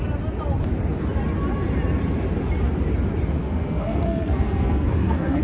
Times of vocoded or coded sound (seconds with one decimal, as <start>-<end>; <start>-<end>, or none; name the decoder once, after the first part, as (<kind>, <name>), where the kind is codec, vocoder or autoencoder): 3.4-5.4 (codec, SNAC)